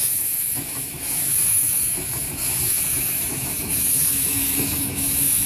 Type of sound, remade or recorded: remade